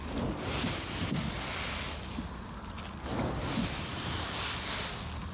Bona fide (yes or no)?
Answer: yes